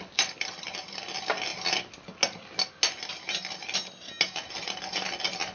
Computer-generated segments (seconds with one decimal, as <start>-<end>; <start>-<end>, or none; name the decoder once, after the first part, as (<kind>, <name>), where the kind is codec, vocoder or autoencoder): none

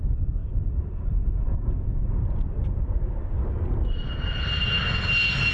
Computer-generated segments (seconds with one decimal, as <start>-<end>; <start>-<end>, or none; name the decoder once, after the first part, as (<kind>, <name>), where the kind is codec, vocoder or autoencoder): 0.4-1.2 (vocoder, BigVGAN v2)

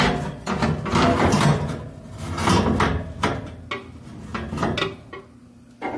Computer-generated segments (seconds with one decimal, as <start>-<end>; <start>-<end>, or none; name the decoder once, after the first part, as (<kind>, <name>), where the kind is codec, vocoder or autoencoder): none

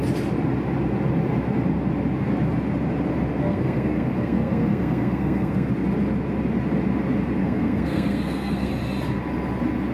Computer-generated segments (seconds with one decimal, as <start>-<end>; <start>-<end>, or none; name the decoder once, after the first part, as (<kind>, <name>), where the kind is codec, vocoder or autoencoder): 3.4-5.7 (codec, SNAC); 7.4-8.7

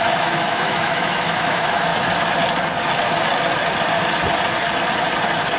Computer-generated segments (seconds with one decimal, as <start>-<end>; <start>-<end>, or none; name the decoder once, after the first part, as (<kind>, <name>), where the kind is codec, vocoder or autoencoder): 0.0-1.9 (autoencoder, DAC-VAE)

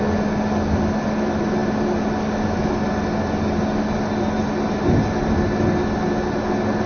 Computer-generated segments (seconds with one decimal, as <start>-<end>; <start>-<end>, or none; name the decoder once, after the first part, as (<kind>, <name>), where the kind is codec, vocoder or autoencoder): none

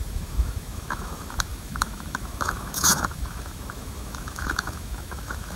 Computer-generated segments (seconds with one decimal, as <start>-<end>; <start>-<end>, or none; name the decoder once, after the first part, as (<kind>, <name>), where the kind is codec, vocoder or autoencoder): 0.0-5.6 (autoencoder, DAC-VAE)